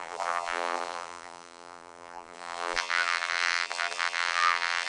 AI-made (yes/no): yes